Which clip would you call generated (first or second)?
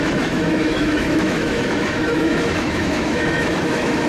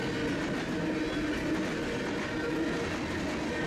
first